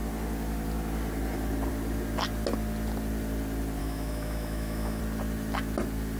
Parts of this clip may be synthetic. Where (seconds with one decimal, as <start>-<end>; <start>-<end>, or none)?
3.8-5.0